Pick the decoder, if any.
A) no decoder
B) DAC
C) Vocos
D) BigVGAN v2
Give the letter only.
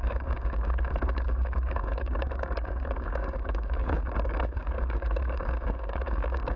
B